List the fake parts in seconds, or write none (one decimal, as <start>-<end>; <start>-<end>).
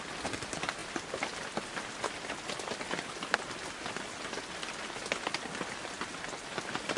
none